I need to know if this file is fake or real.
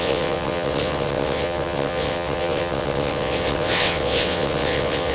fake